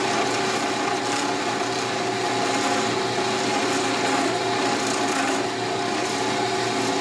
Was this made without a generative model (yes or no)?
yes